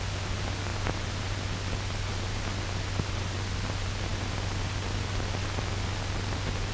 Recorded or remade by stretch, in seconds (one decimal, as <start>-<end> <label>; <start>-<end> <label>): 0.0-6.7 recorded